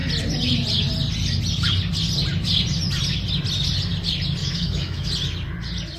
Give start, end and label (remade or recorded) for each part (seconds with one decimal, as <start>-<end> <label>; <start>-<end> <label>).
0.0-4.4 recorded; 4.4-5.1 remade; 5.1-6.0 recorded